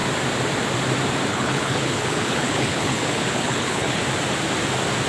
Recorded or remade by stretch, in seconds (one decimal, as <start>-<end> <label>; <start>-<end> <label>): 0.0-1.3 recorded; 1.3-4.0 remade; 4.0-5.1 recorded